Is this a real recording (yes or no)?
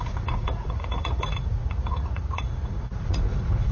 no